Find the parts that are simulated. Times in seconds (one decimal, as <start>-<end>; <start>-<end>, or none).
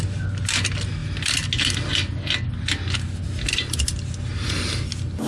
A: none